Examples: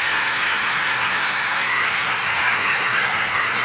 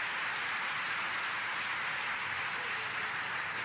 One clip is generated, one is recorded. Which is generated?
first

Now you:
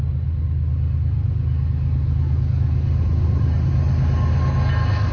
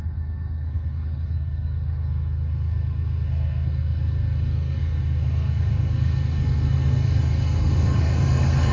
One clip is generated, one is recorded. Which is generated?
second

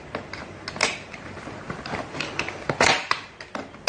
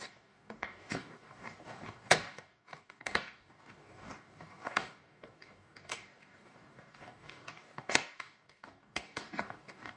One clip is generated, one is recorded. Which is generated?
second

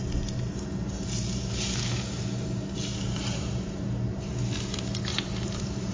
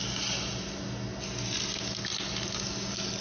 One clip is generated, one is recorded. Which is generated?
first